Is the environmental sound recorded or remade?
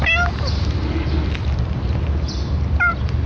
recorded